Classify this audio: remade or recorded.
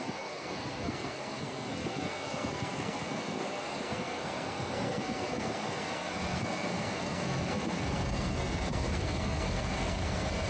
remade